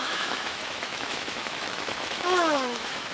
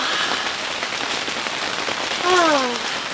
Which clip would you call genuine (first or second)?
second